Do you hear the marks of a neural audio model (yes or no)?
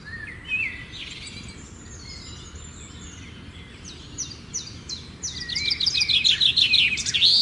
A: no